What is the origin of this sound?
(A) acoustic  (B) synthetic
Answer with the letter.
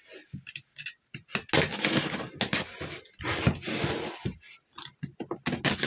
A